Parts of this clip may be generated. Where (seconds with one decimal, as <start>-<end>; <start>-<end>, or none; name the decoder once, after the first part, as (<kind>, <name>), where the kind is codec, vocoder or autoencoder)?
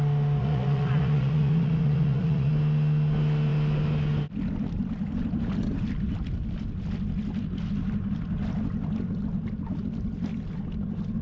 0.4-2.5 (vocoder, Vocos)